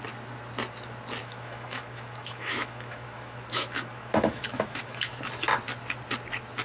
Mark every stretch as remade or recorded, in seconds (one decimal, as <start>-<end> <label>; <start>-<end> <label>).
0.0-1.2 recorded; 1.2-5.2 remade; 5.2-6.6 recorded